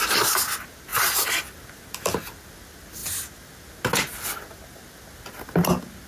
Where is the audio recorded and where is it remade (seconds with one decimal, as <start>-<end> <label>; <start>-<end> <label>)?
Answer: 0.0-6.1 recorded